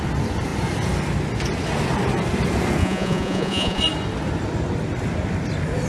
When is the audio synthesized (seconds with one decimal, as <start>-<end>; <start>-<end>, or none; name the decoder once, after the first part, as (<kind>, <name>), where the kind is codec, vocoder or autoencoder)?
2.8-3.8 (vocoder, Vocos)